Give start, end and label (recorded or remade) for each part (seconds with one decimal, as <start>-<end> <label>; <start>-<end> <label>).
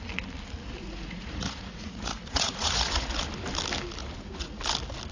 0.0-0.6 recorded; 0.6-3.2 remade; 3.2-4.0 recorded; 4.0-4.6 remade; 4.6-5.1 recorded